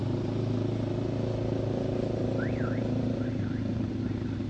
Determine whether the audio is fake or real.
real